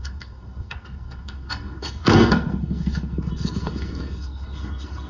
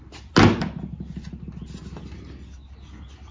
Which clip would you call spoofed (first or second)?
first